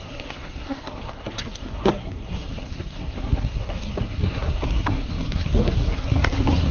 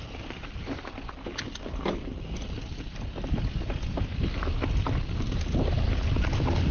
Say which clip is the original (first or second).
second